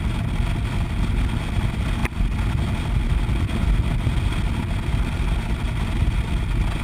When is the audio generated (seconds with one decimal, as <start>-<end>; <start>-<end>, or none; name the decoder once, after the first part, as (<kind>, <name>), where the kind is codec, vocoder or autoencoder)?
none